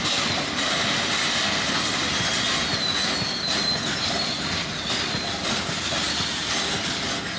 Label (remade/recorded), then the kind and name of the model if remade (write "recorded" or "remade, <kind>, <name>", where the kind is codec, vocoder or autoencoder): recorded